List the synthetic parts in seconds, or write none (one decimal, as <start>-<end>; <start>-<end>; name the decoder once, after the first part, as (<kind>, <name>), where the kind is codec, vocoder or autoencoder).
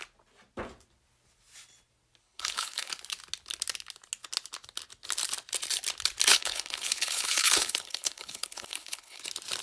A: 2.2-2.9 (codec, HILCodec); 6.3-9.2